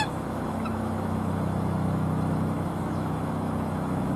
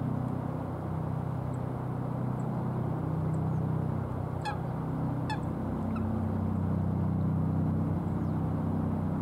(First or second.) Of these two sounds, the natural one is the second